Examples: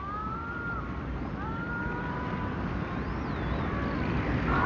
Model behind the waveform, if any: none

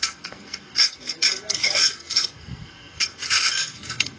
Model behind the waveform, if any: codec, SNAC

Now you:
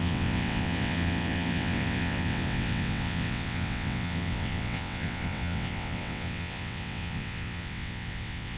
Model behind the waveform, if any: vocoder, WaveNeXt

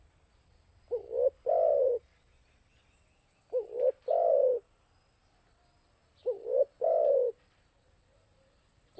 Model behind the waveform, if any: none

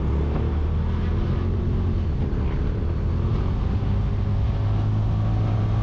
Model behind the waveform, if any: none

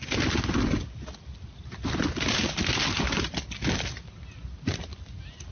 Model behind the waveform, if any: none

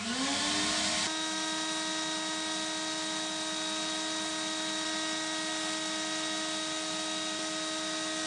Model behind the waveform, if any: none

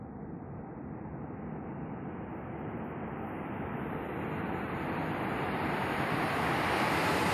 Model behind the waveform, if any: none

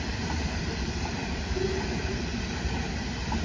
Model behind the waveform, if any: vocoder, BigVGAN v2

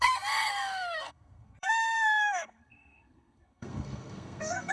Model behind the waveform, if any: codec, SNAC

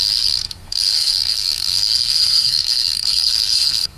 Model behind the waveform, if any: codec, SNAC